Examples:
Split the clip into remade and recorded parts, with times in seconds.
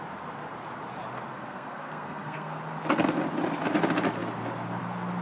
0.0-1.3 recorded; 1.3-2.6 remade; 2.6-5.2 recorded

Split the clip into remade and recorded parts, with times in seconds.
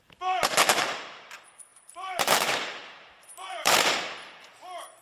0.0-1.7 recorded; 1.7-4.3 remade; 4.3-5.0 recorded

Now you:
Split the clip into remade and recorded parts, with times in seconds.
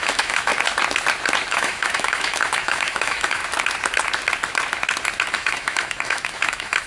0.0-0.5 remade; 0.5-1.5 recorded; 1.5-3.4 remade; 3.4-5.3 recorded; 5.3-6.9 remade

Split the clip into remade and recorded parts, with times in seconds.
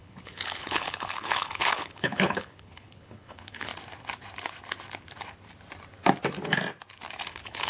0.0-3.7 remade; 3.7-7.3 recorded; 7.3-7.7 remade